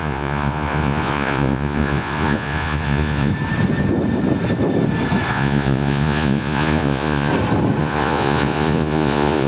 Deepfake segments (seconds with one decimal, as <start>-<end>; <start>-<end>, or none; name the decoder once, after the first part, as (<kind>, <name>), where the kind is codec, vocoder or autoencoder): 0.0-3.3 (vocoder, Vocos); 5.3-7.3; 7.8-9.5